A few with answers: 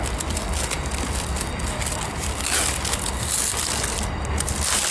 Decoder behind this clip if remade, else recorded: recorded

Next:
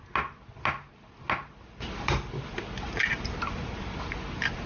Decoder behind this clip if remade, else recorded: recorded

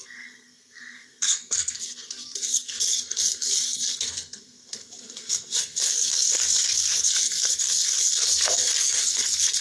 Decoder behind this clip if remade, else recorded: remade, codec, SNAC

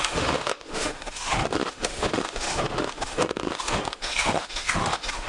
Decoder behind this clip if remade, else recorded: remade, autoencoder, DAC-VAE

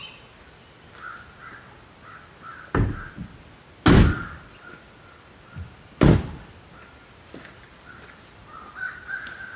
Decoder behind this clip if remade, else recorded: recorded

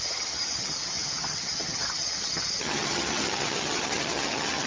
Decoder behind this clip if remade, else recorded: remade, vocoder, HiFi-GAN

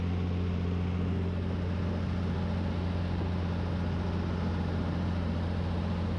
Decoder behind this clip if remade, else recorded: recorded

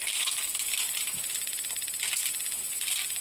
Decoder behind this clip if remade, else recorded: recorded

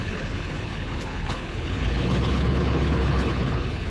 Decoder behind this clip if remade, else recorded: remade, codec, HILCodec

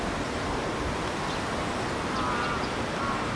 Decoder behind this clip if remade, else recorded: recorded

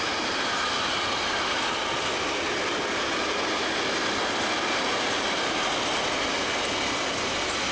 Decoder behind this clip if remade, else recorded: recorded